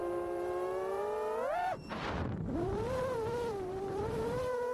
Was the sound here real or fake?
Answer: fake